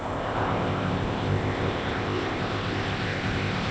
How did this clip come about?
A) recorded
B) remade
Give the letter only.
B